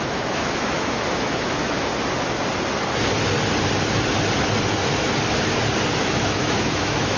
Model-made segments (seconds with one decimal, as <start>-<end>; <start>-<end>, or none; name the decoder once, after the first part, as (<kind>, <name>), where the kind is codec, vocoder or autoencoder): 0.0-1.9 (autoencoder, DAC-VAE); 6.0-7.2